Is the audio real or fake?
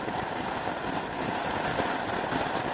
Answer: real